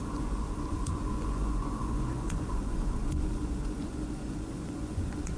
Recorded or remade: remade